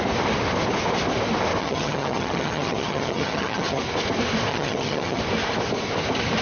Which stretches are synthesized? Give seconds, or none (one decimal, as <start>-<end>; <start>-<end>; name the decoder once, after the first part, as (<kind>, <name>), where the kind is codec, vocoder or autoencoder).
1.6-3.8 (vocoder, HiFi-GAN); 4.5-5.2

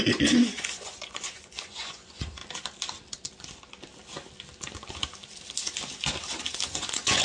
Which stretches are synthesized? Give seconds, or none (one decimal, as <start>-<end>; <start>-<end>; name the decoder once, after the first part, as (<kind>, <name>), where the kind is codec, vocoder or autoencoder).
0.0-2.4 (vocoder, Vocos); 6.7-7.2

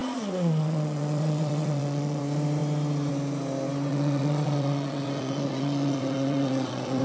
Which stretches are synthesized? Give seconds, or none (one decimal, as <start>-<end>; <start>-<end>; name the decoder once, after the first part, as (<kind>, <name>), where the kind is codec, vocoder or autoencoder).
0.0-2.2 (vocoder, Vocos); 3.9-7.0

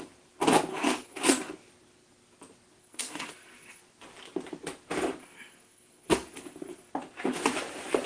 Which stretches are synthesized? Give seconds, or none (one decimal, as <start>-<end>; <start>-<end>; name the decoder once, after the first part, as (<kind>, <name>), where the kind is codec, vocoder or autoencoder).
0.7-1.5 (codec, SNAC); 2.8-3.8; 5.2-6.9

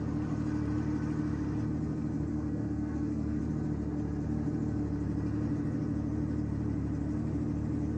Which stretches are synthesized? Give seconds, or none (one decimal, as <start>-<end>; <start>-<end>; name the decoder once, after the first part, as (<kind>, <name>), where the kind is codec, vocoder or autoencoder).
2.3-3.4 (codec, SNAC)